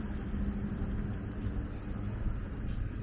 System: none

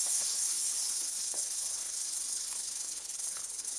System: codec, HILCodec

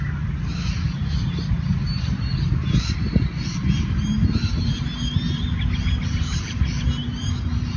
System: none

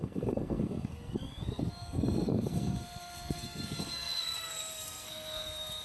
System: codec, SNAC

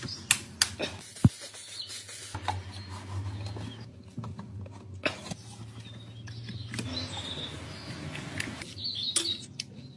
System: none